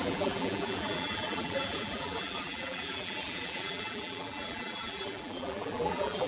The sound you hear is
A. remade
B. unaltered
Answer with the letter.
A